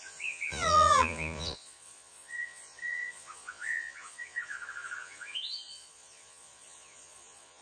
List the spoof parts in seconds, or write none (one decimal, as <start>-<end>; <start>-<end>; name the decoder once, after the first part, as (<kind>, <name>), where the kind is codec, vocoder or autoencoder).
0.0-7.6 (vocoder, Vocos)